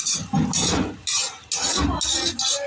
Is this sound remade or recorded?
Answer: recorded